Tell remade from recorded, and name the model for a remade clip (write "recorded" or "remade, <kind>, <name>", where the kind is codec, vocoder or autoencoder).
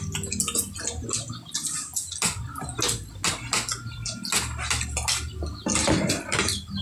recorded